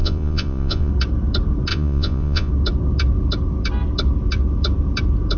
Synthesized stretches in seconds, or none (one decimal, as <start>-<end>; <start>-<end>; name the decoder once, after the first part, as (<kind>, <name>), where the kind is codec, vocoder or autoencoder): 0.0-0.9 (vocoder, Vocos); 1.7-2.5